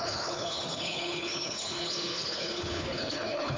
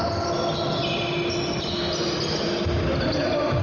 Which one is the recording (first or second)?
second